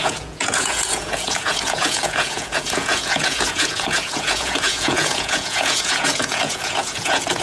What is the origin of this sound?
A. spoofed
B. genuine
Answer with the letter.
A